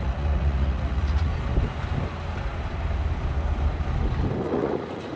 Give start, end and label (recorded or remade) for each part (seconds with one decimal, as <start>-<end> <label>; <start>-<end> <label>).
0.0-1.3 remade; 1.3-4.4 recorded; 4.4-5.2 remade